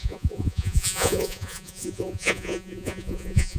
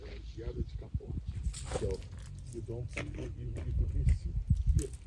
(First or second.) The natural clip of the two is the second